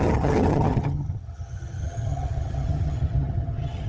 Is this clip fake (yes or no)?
yes